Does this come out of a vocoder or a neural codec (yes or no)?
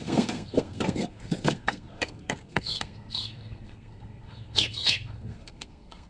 yes